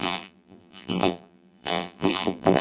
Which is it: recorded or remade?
remade